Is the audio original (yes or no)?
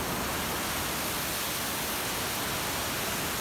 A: yes